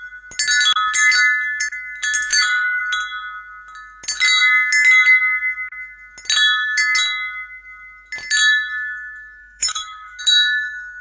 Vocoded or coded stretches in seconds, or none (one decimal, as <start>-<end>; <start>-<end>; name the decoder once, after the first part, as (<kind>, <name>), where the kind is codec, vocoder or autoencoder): 2.3-2.8 (autoencoder, DAC-VAE); 9.4-10.2